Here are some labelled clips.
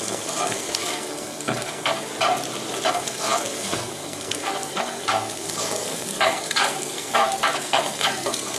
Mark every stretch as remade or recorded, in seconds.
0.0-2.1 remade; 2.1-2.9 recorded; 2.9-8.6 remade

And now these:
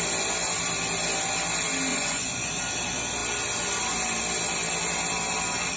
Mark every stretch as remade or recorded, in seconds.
0.0-1.9 recorded; 1.9-2.5 remade; 2.5-5.8 recorded

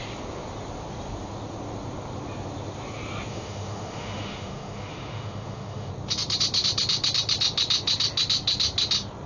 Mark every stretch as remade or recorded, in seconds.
0.0-3.3 recorded; 3.3-5.9 remade; 5.9-9.3 recorded

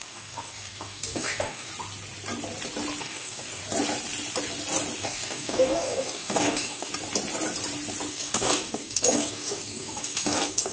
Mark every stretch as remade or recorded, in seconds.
0.0-1.7 remade; 1.7-3.0 recorded; 3.0-3.6 remade; 3.6-5.0 recorded; 5.0-6.9 remade; 6.9-8.1 recorded; 8.1-10.7 remade

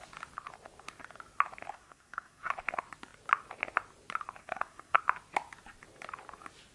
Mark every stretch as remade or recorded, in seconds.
0.0-1.7 recorded; 1.7-2.5 remade; 2.5-4.4 recorded; 4.4-5.0 remade; 5.0-6.7 recorded